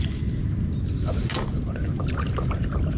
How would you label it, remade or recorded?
recorded